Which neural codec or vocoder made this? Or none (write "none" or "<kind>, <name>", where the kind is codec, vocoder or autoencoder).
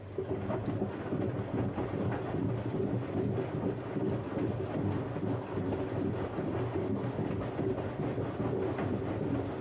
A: none